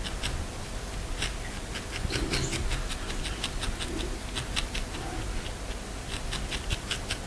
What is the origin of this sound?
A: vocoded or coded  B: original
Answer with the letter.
B